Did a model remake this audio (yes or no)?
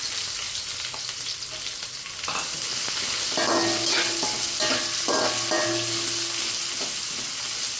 no